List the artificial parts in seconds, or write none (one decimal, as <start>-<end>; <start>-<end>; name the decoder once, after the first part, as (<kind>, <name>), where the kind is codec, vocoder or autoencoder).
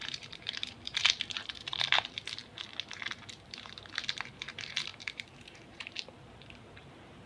0.0-2.4 (vocoder, BigVGAN v2); 3.0-7.3